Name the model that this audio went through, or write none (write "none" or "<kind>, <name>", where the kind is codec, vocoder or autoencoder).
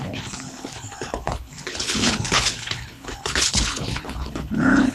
codec, HILCodec